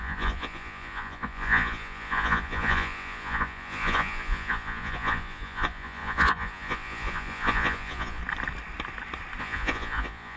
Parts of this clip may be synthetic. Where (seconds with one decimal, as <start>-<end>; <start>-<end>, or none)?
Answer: 0.0-8.2; 9.4-10.4